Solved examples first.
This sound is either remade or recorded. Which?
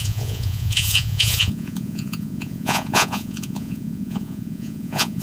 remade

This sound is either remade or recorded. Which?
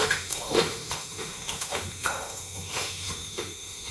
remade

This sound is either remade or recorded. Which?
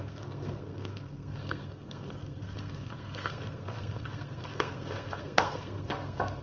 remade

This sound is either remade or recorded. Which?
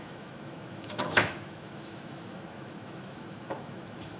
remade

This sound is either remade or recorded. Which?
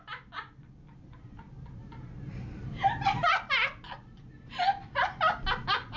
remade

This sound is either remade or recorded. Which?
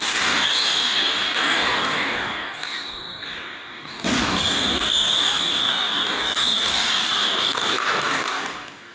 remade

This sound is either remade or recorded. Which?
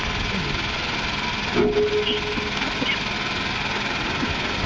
recorded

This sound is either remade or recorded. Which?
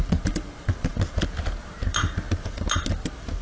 recorded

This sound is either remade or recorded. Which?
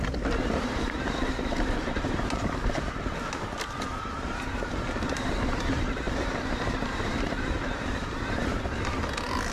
remade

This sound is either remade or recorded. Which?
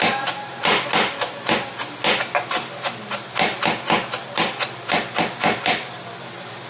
recorded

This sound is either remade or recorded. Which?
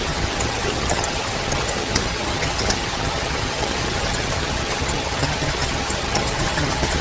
remade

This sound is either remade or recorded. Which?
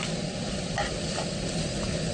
recorded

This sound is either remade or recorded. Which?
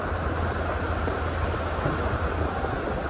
recorded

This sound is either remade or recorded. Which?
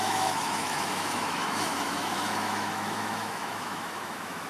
remade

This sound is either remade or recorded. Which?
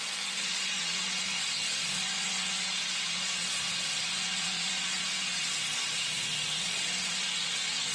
remade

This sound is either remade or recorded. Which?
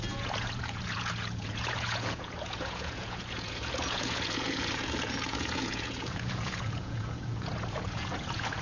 remade